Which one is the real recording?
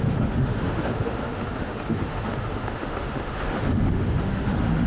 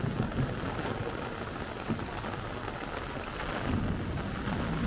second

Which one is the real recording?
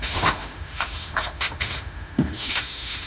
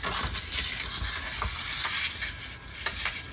second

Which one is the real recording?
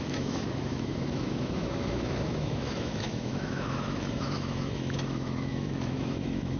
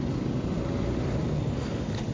second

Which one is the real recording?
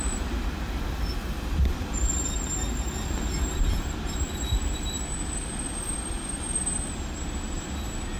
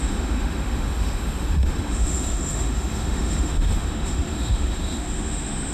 first